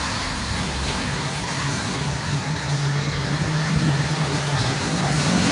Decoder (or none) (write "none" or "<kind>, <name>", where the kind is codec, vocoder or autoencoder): codec, SNAC